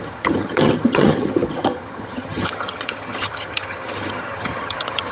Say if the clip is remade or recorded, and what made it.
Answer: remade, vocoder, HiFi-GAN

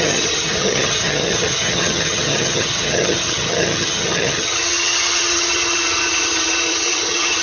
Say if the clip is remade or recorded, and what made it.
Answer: remade, vocoder, HiFi-GAN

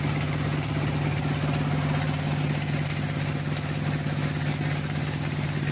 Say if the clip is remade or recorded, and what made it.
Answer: recorded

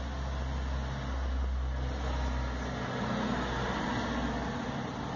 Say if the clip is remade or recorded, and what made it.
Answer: recorded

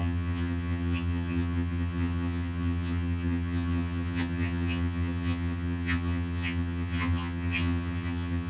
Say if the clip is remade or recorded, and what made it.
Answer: remade, vocoder, HiFi-GAN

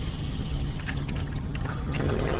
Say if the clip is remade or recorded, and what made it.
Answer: remade, vocoder, HiFi-GAN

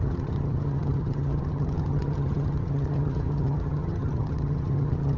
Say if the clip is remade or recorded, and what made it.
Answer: remade, vocoder, HiFi-GAN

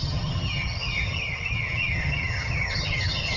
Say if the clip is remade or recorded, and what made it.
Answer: remade, vocoder, HiFi-GAN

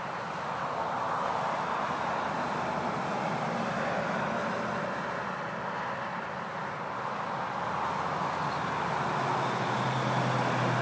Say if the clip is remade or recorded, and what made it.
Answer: recorded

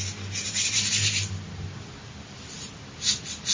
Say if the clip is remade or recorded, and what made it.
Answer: recorded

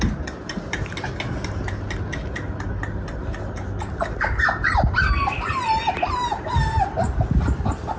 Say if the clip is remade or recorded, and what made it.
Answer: recorded